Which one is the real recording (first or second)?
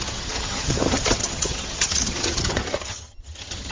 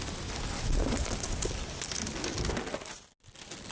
second